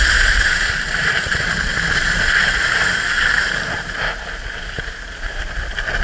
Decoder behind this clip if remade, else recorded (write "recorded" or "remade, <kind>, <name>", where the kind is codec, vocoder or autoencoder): recorded